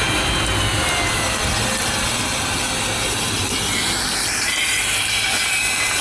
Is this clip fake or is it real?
real